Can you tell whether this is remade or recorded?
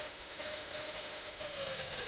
remade